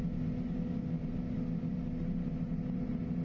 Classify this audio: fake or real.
real